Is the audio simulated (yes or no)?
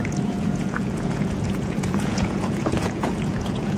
yes